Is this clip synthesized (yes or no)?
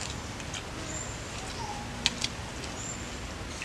no